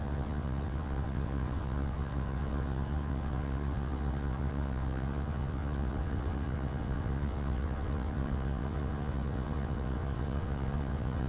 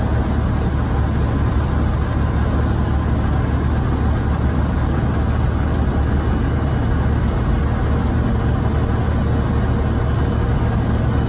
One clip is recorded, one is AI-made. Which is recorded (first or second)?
second